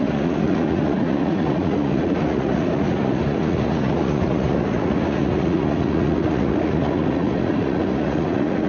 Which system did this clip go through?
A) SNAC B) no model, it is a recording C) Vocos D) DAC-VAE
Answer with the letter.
C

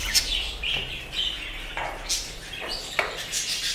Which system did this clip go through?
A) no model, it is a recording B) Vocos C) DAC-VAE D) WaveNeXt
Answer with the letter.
A